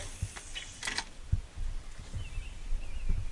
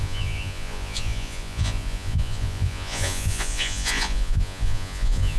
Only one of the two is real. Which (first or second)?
first